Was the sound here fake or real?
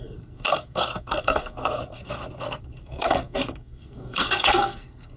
fake